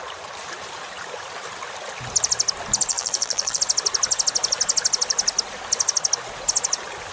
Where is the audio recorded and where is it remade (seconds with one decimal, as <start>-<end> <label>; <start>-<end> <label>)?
0.0-2.9 recorded; 2.9-3.6 remade; 3.6-7.1 recorded